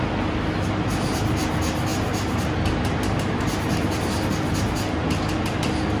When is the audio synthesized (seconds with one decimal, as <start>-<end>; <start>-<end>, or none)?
none

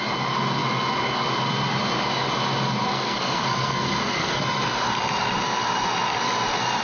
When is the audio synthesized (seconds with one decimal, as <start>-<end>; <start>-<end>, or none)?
2.9-4.4